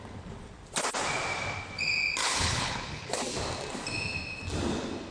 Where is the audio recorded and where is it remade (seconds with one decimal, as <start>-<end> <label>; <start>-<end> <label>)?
0.0-2.2 recorded; 2.2-3.2 remade; 3.2-5.1 recorded